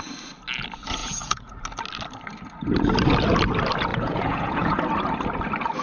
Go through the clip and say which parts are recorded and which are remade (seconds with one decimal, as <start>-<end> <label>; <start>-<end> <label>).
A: 0.0-1.0 recorded; 1.0-1.5 remade; 1.5-3.9 recorded; 3.9-4.8 remade; 4.8-5.8 recorded